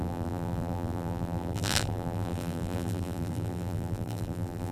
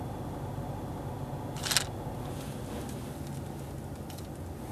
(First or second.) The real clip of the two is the second